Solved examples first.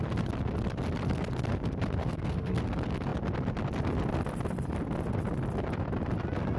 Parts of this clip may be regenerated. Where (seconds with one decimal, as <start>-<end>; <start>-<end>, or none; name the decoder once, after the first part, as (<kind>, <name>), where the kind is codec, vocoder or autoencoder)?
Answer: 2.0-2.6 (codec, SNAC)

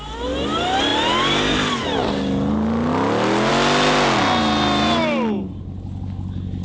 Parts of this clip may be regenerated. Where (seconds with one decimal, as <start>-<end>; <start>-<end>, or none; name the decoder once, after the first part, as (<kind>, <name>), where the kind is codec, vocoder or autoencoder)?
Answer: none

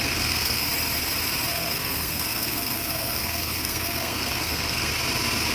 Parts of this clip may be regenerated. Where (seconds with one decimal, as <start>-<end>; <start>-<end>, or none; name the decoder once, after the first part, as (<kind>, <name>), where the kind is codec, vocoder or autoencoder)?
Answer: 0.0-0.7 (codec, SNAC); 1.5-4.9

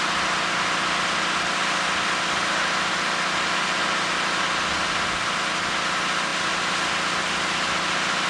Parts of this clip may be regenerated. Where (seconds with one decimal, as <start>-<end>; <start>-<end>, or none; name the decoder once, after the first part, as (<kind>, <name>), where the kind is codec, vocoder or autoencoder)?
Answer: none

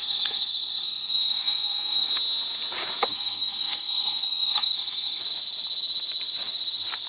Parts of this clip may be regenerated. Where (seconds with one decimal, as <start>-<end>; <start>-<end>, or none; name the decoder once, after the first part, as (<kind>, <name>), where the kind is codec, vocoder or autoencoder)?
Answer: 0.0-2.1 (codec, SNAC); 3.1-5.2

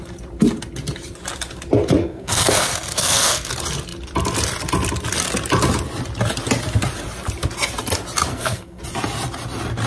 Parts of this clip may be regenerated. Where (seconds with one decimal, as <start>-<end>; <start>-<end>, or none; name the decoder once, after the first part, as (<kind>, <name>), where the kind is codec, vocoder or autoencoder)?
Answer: 2.0-3.5 (codec, SNAC); 8.3-8.8

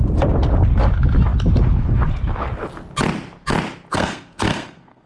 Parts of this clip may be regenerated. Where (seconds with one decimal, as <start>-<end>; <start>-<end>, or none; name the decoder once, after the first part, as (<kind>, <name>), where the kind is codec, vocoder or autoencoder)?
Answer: 3.9-5.1 (codec, SNAC)

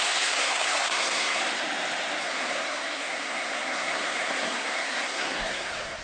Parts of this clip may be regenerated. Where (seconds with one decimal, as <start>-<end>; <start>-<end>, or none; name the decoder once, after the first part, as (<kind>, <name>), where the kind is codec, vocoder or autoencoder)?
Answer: 0.0-1.4 (codec, SNAC); 2.2-6.0